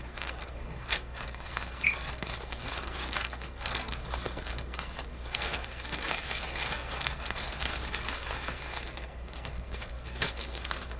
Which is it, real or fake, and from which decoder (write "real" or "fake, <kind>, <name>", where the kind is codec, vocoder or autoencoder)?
fake, codec, SNAC